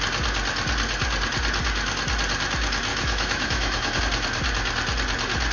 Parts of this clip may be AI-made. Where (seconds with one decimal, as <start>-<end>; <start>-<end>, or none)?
2.9-4.0